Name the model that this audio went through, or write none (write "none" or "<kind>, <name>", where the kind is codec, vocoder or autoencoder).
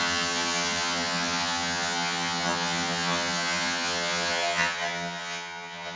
vocoder, HiFi-GAN